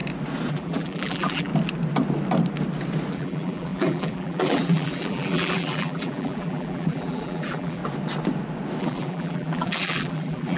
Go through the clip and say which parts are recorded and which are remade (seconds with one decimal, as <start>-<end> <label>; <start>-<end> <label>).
0.0-0.5 recorded; 0.5-1.5 remade; 1.5-3.1 recorded; 3.1-7.8 remade; 7.8-8.8 recorded; 8.8-10.6 remade